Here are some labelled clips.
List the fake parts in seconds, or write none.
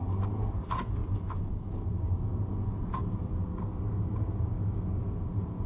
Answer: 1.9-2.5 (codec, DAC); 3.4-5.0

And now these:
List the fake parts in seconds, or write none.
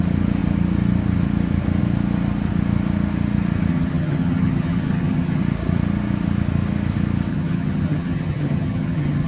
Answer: 3.7-5.4 (vocoder, HiFi-GAN); 7.3-9.3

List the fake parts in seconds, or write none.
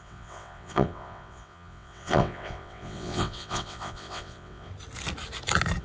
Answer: 0.0-4.7 (vocoder, WaveNeXt)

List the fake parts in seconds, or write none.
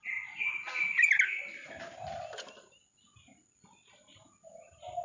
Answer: none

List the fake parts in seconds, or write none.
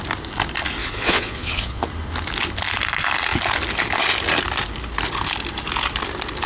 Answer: 0.8-1.8 (vocoder, Vocos)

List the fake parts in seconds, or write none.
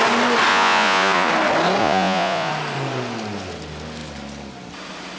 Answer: 0.5-1.3 (vocoder, Vocos); 1.8-2.5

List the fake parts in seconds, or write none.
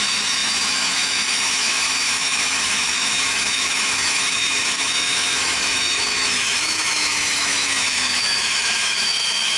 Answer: 0.0-9.6 (autoencoder, DAC-VAE)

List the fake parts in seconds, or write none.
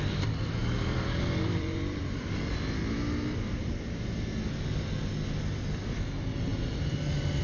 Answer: 0.6-2.4 (vocoder, BigVGAN v2)